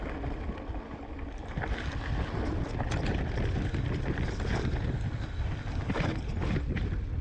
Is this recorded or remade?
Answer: recorded